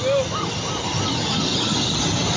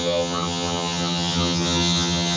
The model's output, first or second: second